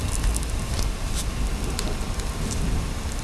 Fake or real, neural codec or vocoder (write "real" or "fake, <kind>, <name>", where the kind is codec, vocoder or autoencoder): real